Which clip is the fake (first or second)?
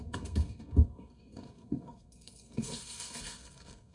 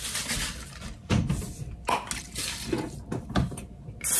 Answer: first